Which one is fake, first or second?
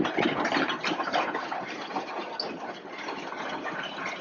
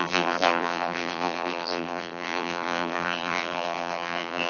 second